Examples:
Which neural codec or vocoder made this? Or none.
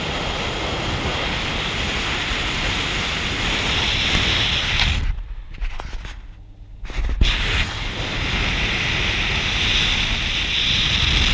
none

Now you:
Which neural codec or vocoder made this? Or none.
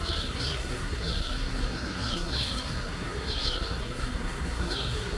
codec, SNAC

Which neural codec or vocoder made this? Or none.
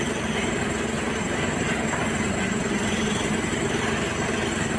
none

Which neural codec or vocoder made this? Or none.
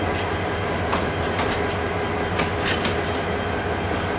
none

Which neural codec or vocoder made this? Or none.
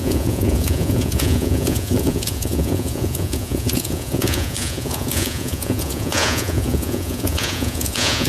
vocoder, Vocos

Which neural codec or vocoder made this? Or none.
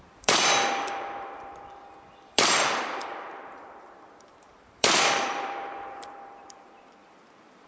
vocoder, BigVGAN v2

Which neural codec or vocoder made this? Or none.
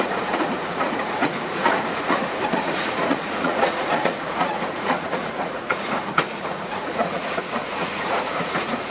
vocoder, Vocos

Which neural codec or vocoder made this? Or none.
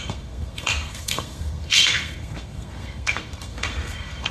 codec, SNAC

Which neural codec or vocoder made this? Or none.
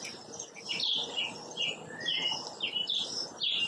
vocoder, BigVGAN v2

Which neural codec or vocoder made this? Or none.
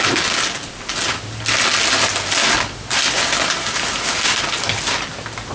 none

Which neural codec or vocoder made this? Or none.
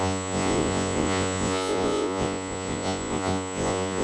vocoder, Vocos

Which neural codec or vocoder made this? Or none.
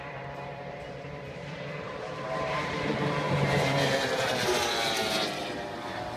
vocoder, BigVGAN v2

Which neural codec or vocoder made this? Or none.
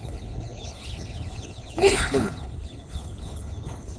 codec, HILCodec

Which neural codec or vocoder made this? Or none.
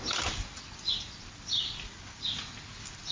none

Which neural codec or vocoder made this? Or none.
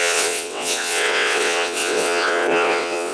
vocoder, WaveNeXt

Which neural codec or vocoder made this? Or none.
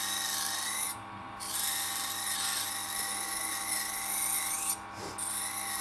none